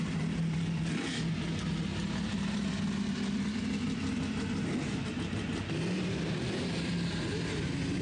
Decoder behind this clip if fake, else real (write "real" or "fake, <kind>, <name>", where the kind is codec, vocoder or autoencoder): real